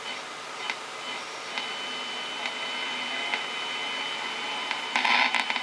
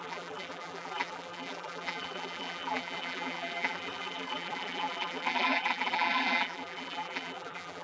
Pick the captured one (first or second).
first